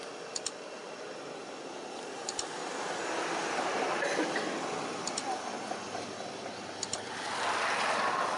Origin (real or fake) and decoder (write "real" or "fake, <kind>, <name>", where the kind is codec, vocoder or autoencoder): real